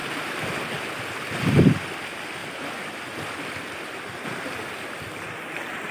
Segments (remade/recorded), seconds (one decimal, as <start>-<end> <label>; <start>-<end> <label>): 0.0-2.4 recorded; 2.4-5.9 remade